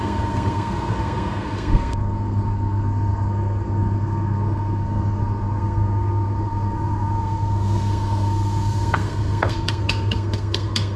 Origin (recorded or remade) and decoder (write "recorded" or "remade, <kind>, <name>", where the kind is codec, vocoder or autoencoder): remade, codec, SNAC